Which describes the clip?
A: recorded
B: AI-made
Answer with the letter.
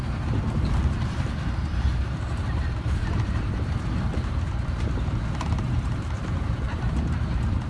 B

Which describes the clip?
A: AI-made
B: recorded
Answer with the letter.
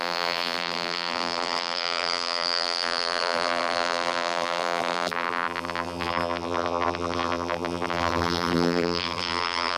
A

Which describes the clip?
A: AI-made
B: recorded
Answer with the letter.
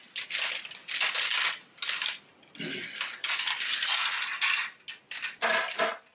B